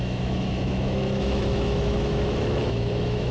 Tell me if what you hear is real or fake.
fake